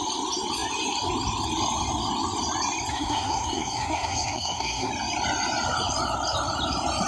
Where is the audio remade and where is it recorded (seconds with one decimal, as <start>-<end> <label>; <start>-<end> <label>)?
0.0-2.9 recorded; 2.9-4.9 remade; 4.9-7.1 recorded